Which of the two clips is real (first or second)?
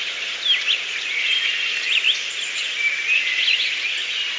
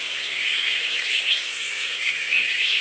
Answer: first